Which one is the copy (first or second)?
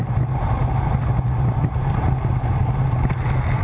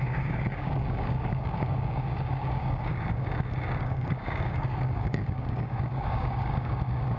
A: second